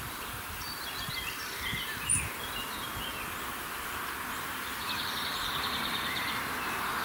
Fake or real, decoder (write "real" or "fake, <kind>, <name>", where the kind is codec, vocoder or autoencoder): fake, vocoder, BigVGAN v2